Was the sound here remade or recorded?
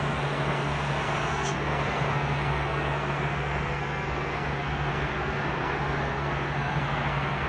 remade